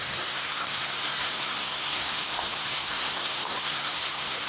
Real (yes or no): no